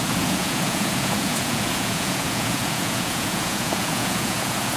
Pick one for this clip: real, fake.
fake